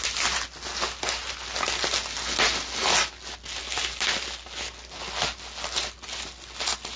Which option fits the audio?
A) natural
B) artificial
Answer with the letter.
A